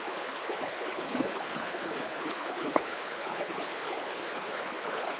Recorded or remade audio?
remade